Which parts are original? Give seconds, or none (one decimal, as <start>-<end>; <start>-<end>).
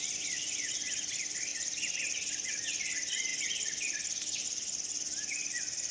1.5-2.5; 3.3-4.4